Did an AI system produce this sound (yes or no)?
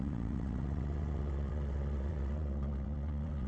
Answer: yes